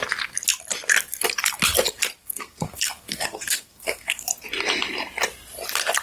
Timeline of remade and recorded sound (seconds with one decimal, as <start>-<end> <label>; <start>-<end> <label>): 0.0-2.2 recorded; 2.2-4.3 remade; 4.3-6.0 recorded